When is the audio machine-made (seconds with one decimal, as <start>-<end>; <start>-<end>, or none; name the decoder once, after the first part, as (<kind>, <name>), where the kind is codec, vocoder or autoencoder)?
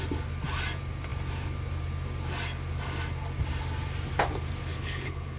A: 4.7-5.4 (codec, HILCodec)